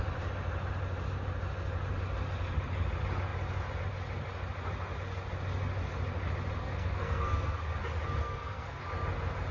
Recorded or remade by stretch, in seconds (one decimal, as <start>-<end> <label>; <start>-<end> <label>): 0.0-6.6 recorded; 6.6-7.6 remade; 7.6-8.2 recorded; 8.2-8.8 remade; 8.8-9.5 recorded